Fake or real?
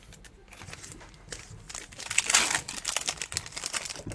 real